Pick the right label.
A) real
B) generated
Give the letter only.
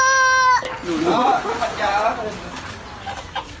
A